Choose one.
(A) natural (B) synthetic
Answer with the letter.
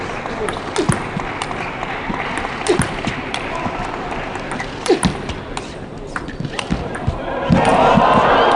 A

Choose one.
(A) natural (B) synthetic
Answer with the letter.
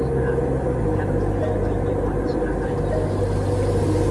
A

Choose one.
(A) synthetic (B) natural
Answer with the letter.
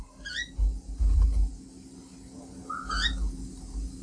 B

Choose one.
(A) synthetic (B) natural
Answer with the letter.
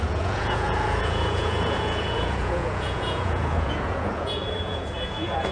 A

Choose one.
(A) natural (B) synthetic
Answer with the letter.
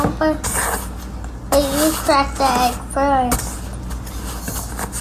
A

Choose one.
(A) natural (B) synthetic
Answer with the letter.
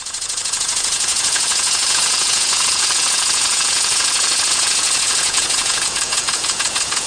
B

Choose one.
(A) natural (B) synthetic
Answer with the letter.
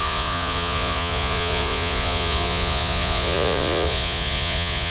B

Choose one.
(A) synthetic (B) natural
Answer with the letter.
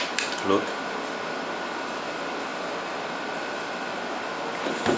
B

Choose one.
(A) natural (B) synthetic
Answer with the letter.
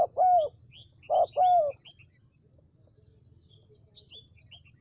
A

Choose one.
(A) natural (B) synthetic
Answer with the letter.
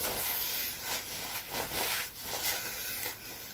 A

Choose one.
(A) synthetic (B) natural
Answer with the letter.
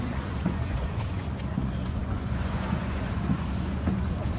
A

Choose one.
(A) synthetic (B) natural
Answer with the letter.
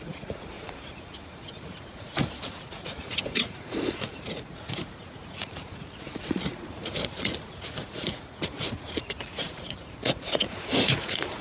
A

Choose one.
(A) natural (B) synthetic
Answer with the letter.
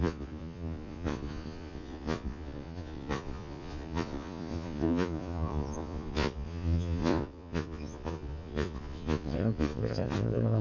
B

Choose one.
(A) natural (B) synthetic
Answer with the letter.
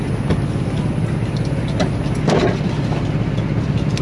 A